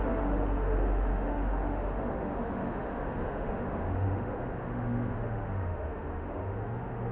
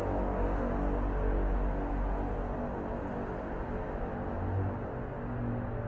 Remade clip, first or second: first